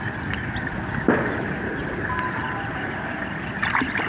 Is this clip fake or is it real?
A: real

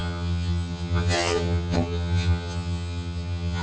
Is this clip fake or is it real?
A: fake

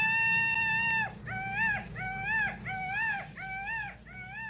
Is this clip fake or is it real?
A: real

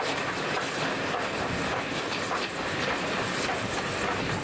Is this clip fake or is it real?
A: real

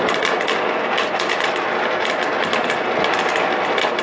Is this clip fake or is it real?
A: real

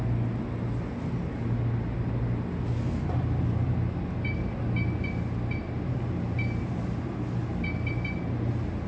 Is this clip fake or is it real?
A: real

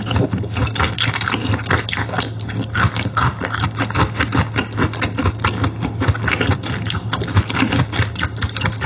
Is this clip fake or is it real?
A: real